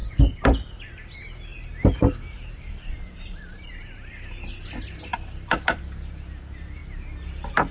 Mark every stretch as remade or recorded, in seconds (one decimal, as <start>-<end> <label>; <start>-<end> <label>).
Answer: 0.0-0.7 remade; 0.7-1.5 recorded; 1.5-3.7 remade; 3.7-5.1 recorded; 5.1-5.8 remade; 5.8-7.7 recorded